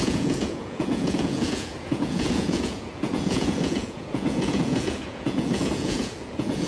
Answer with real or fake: fake